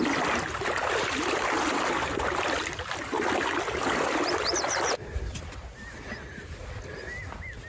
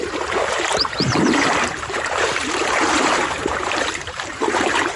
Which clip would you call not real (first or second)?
second